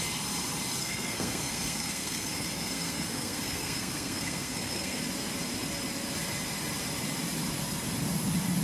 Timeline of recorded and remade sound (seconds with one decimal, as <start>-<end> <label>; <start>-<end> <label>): 0.0-0.8 recorded; 0.8-5.0 remade; 5.0-8.6 recorded